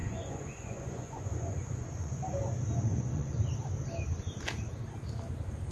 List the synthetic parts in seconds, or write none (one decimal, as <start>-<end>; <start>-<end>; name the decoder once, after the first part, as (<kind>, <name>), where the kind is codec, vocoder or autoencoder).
0.0-3.4 (vocoder, Vocos)